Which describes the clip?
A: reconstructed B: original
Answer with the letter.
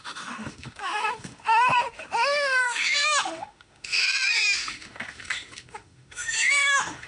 A